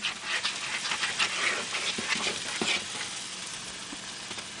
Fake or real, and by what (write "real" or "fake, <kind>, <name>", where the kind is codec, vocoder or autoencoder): real